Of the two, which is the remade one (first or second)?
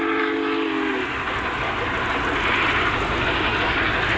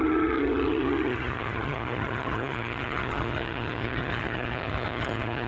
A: second